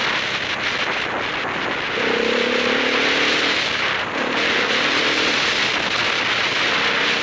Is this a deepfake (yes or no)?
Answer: no